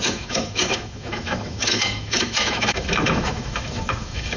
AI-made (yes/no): yes